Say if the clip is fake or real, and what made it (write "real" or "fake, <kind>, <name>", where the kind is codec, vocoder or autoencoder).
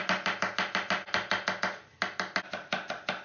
real